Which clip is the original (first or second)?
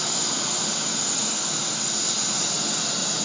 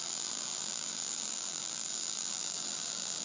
first